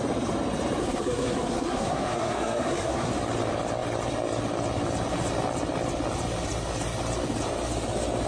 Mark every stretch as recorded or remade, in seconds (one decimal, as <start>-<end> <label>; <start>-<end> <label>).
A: 0.0-0.8 recorded; 0.8-3.1 remade; 3.1-8.3 recorded